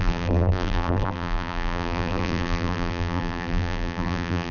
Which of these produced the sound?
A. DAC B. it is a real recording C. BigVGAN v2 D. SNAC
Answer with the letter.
C